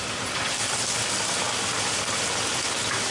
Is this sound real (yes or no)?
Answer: yes